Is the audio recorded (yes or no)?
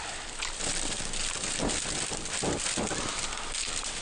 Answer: yes